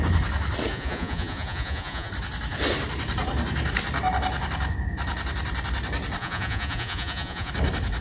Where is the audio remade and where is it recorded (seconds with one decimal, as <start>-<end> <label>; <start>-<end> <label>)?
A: 0.0-0.7 recorded; 0.7-2.1 remade; 2.1-6.2 recorded; 6.2-7.5 remade; 7.5-8.0 recorded